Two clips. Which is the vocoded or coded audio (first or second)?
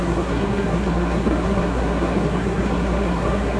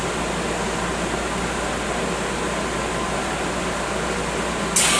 first